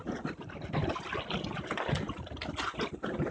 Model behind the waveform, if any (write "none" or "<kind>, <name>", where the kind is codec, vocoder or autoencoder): none